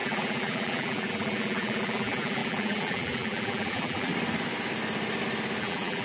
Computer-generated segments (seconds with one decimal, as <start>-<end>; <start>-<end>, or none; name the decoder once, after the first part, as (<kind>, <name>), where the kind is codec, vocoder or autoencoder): 0.0-4.1 (vocoder, BigVGAN v2); 5.6-6.0